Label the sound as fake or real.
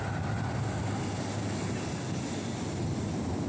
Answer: real